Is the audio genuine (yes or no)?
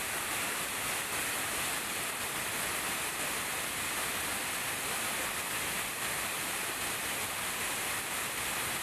yes